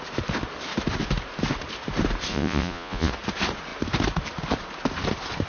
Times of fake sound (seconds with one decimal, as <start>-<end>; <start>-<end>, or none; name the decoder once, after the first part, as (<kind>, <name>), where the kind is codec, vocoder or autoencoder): 2.3-3.1 (vocoder, Vocos)